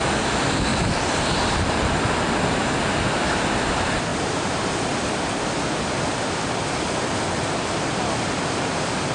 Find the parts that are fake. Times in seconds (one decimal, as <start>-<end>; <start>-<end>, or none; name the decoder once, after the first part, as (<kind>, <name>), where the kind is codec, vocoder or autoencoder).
0.7-1.9 (vocoder, BigVGAN v2); 4.1-5.0